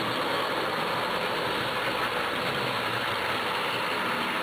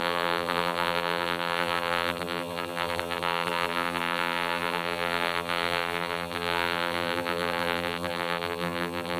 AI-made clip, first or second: second